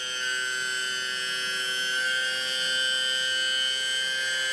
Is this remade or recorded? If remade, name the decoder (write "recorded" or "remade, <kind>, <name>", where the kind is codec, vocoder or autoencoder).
recorded